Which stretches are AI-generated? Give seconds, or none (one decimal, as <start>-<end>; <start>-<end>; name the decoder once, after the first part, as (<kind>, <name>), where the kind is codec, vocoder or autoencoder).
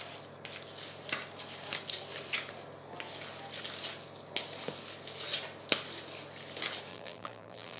6.9-7.8 (vocoder, BigVGAN v2)